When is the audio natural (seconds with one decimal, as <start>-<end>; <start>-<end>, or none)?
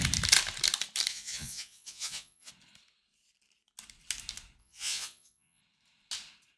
0.0-1.1; 2.5-4.6; 5.6-6.6